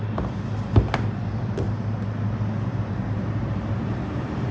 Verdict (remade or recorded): recorded